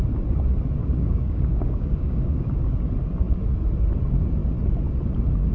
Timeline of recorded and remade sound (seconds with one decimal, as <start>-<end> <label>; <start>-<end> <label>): 0.0-0.8 recorded; 0.8-2.8 remade; 2.8-5.5 recorded